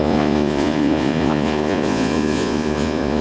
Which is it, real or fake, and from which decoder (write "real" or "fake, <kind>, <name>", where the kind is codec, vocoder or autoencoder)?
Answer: fake, vocoder, Vocos